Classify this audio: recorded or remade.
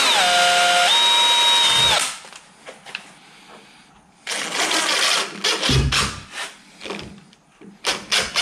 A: recorded